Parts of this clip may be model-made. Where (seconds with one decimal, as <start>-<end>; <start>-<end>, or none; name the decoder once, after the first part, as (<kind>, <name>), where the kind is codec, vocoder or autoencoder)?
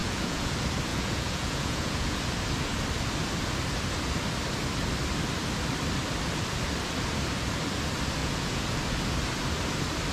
0.0-0.5 (vocoder, Vocos); 0.9-2.2; 8.2-8.8